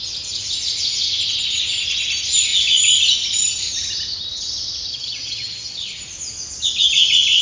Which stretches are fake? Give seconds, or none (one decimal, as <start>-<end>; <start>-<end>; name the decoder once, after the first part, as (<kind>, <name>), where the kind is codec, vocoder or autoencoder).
4.9-6.0 (vocoder, HiFi-GAN)